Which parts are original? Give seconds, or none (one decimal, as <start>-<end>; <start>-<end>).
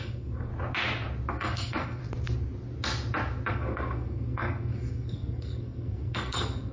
0.5-1.3; 2.0-3.5